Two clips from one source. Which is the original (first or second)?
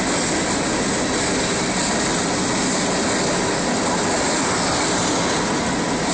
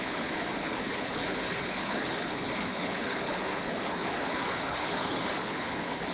first